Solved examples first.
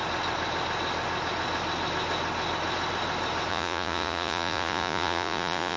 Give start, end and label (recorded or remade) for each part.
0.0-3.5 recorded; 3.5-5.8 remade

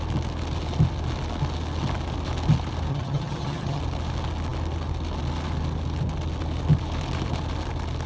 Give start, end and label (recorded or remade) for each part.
0.0-2.9 recorded; 2.9-3.8 remade; 3.8-8.1 recorded